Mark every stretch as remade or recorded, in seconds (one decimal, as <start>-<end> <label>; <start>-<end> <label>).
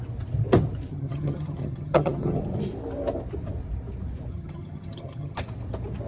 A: 0.0-0.9 recorded; 0.9-2.4 remade; 2.4-4.3 recorded; 4.3-5.4 remade; 5.4-6.1 recorded